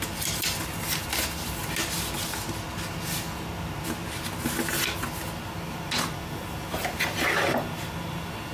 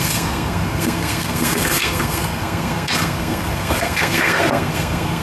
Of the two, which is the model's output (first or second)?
second